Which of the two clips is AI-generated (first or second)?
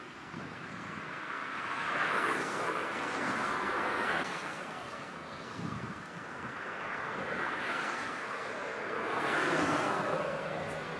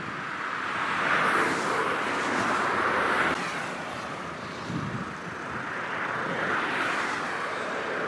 first